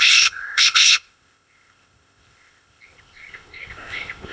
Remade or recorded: remade